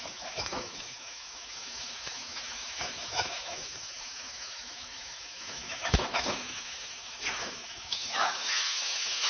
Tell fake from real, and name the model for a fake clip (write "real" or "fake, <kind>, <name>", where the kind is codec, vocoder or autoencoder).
fake, autoencoder, DAC-VAE